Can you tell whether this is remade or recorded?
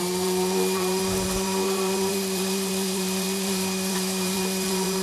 remade